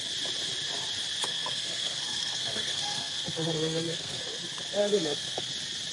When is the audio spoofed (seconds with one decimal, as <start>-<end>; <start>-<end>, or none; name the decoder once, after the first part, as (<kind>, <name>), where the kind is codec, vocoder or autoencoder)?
1.2-4.2 (codec, SNAC); 4.8-5.5